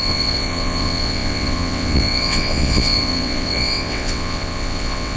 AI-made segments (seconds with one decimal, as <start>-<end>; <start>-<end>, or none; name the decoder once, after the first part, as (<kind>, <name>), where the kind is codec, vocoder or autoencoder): 0.0-5.2 (vocoder, WaveNeXt)